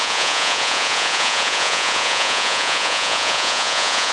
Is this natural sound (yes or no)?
no